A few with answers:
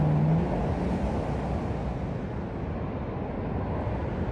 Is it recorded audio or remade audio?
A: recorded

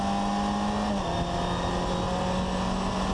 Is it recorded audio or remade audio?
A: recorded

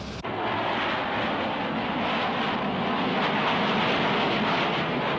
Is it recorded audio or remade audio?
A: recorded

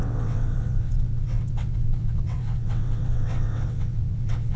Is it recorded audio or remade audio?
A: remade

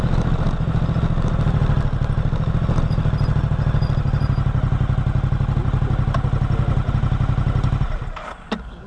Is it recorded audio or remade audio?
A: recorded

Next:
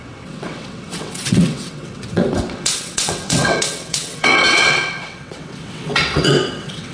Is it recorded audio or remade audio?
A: remade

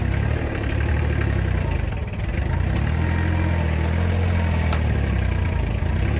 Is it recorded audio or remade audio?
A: recorded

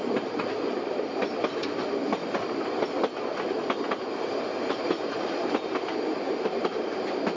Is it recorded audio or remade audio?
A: recorded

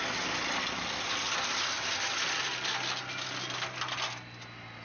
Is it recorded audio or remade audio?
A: recorded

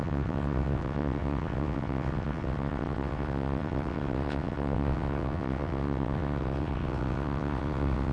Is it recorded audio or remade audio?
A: remade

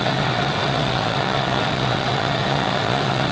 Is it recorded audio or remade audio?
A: remade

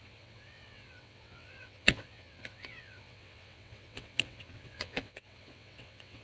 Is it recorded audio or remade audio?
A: remade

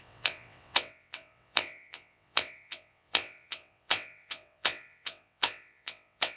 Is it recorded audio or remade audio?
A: remade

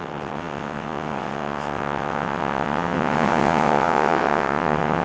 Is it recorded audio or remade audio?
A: remade